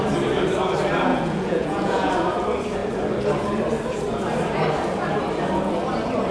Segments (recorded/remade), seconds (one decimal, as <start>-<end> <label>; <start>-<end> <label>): 0.0-1.1 recorded; 1.1-2.1 remade; 2.1-6.3 recorded